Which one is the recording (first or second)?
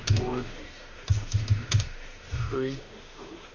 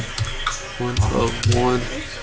second